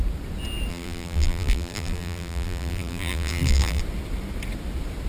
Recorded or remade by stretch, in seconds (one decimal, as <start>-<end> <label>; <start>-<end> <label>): 0.0-0.7 recorded; 0.7-3.8 remade; 3.8-5.1 recorded